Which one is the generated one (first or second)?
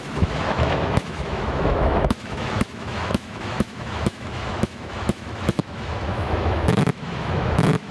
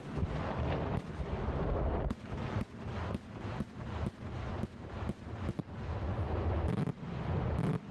first